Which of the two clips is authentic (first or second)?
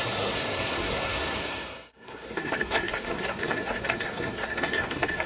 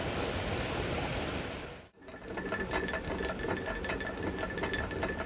second